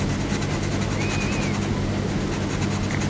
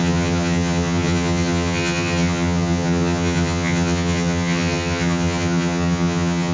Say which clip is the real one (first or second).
first